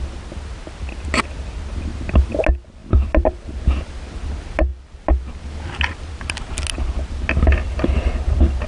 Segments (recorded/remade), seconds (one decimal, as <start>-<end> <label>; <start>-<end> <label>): 0.0-1.9 recorded; 1.9-2.4 remade; 2.4-2.8 recorded; 2.8-3.4 remade; 3.4-8.7 recorded